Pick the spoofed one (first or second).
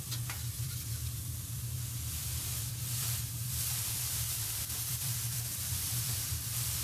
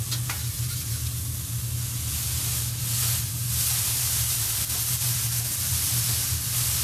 first